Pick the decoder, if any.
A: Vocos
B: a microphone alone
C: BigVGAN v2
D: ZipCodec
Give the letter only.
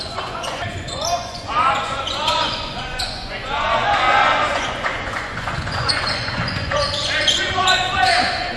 A